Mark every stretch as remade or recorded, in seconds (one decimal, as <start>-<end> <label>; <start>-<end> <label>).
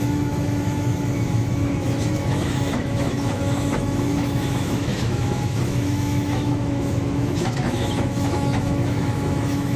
0.0-9.8 remade